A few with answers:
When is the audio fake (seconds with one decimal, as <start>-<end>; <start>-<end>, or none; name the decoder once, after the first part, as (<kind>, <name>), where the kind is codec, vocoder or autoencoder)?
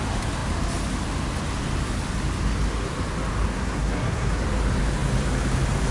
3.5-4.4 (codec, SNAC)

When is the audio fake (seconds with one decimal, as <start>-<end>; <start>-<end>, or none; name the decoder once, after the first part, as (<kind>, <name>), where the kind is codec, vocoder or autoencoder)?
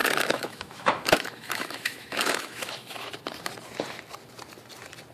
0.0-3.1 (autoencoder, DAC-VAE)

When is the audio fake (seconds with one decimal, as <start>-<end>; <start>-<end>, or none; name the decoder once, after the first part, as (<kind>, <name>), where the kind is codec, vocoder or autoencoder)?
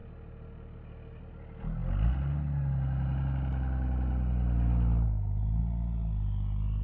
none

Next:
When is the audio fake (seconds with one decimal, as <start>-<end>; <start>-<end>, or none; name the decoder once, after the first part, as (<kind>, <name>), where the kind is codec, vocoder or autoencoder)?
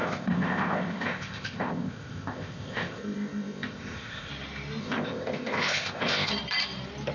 0.0-4.3 (codec, ZipCodec); 4.8-6.3